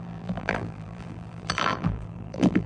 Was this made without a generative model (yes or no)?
no